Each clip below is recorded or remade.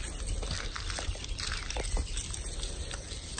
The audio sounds recorded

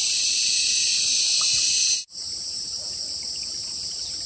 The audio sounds remade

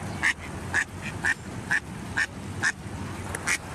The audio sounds recorded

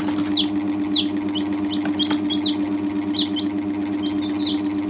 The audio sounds recorded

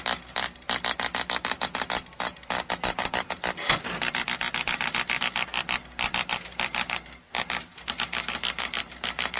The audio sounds recorded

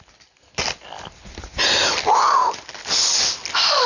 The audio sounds recorded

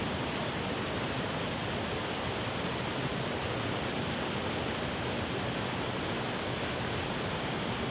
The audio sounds recorded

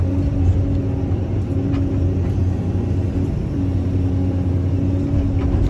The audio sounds recorded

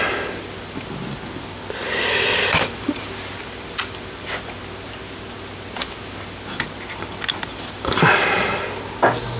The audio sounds recorded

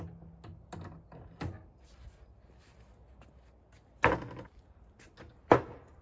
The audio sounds recorded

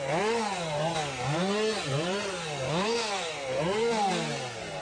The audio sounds recorded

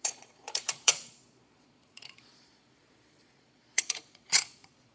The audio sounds remade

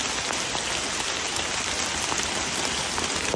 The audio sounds recorded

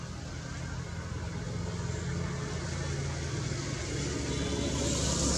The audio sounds recorded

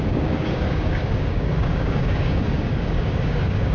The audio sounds remade